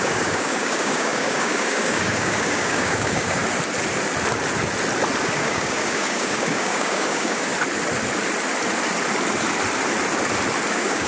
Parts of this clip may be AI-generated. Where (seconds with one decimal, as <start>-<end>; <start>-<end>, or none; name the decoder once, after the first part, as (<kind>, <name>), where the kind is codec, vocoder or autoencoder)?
0.0-3.4 (codec, DAC); 5.2-7.5; 10.7-11.1